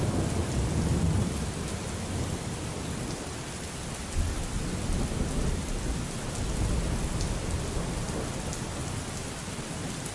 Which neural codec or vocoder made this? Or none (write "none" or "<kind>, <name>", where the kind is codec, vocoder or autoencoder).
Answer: none